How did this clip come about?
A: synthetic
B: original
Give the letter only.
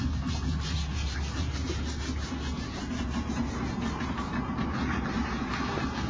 B